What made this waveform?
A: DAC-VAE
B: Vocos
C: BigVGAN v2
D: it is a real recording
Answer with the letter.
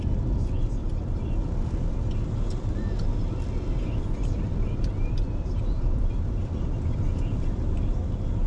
C